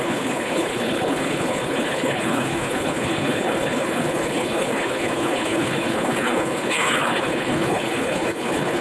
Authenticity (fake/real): fake